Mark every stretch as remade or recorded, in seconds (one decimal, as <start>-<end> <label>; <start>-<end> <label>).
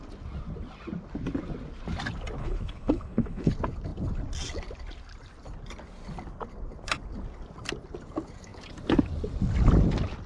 0.0-2.4 recorded; 2.4-3.5 remade; 3.5-10.3 recorded